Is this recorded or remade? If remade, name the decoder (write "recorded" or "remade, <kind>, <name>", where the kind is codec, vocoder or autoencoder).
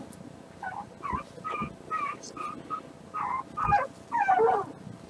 recorded